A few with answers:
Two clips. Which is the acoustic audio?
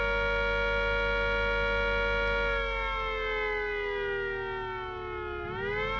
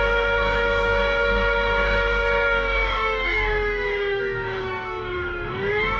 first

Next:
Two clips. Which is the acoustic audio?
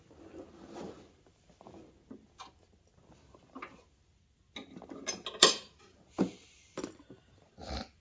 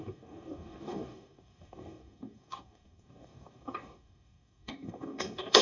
first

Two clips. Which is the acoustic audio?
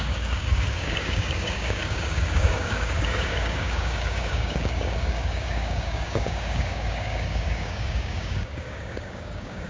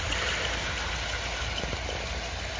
second